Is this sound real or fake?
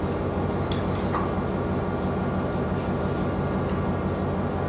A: real